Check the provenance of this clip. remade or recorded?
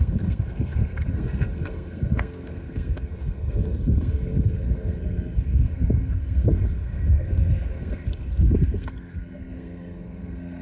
remade